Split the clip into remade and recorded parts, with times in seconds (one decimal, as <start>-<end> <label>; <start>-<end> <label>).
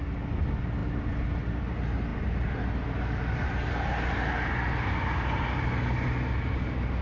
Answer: 0.0-7.0 recorded